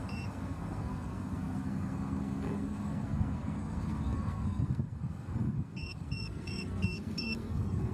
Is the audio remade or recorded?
remade